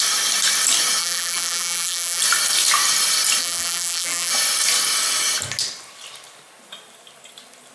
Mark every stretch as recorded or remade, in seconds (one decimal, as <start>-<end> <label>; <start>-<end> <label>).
0.0-1.0 recorded; 1.0-2.2 remade; 2.2-3.4 recorded; 3.4-4.3 remade; 4.3-7.7 recorded